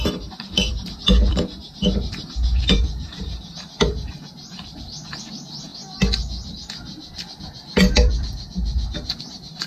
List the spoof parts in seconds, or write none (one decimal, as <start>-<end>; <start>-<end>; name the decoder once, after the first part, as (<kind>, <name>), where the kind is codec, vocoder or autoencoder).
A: 0.0-0.7 (vocoder, BigVGAN v2); 1.3-5.7; 9.2-9.7